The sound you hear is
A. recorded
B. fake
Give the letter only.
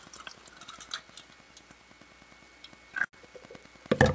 A